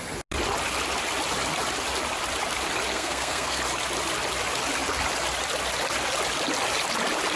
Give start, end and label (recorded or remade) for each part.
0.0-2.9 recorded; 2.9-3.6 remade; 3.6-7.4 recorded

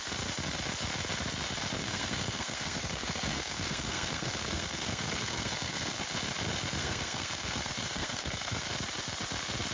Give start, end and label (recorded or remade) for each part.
0.0-1.8 recorded; 1.8-6.0 remade; 6.0-6.8 recorded; 6.8-8.6 remade; 8.6-9.7 recorded

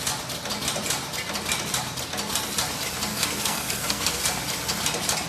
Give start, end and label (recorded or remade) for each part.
0.0-3.1 recorded; 3.1-4.2 remade; 4.2-5.3 recorded

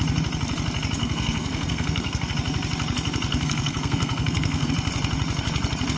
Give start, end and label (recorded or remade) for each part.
0.0-1.0 recorded; 1.0-2.3 remade; 2.3-3.3 recorded; 3.3-4.7 remade; 4.7-6.0 recorded

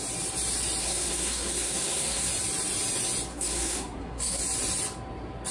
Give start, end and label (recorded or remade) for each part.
0.0-0.8 recorded; 0.8-2.3 remade; 2.3-3.3 recorded; 3.3-4.4 remade; 4.4-5.5 recorded

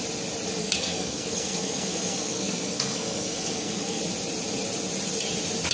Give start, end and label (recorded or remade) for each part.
0.0-0.6 recorded; 0.6-4.0 remade; 4.0-5.7 recorded

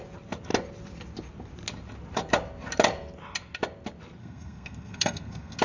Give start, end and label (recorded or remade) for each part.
0.0-4.2 recorded; 4.2-5.6 remade